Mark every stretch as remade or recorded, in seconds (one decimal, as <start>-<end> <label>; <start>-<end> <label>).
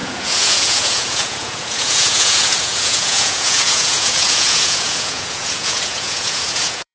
0.0-6.9 remade